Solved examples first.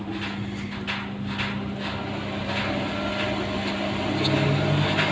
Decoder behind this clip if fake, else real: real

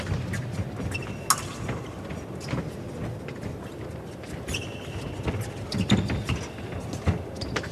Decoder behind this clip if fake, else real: real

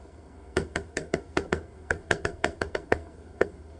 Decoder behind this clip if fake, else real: fake, codec, SNAC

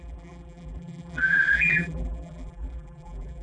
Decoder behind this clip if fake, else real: fake, vocoder, BigVGAN v2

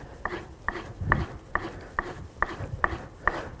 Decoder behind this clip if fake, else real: real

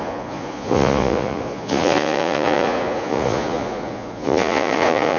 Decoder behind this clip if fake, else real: fake, vocoder, Vocos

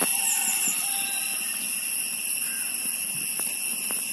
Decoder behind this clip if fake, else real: real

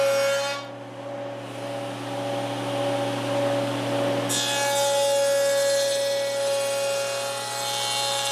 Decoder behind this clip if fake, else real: real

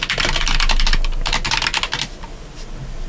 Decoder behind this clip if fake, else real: real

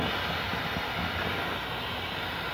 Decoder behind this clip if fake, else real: real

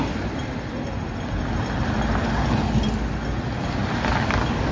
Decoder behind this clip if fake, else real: real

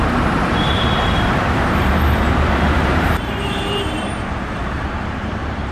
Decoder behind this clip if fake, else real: fake, vocoder, BigVGAN v2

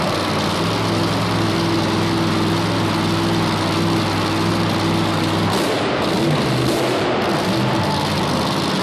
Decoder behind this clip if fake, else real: real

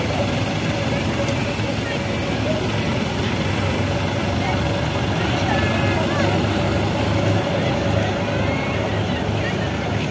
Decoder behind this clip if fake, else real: real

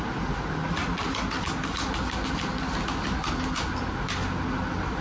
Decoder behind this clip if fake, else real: real